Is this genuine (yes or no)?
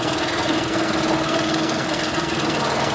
no